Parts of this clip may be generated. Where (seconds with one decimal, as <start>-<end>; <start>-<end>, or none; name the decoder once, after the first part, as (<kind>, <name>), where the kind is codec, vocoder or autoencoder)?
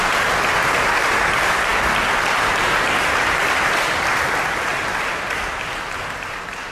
none